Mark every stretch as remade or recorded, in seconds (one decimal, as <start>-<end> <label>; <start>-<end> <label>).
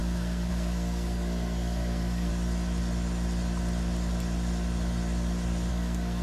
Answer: 0.0-2.3 remade; 2.3-5.7 recorded; 5.7-6.2 remade